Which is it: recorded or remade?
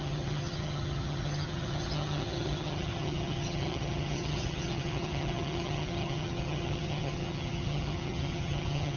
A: remade